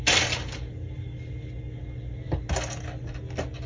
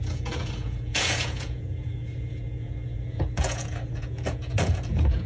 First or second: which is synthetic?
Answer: second